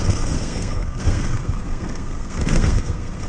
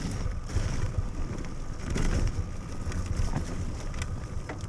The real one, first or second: second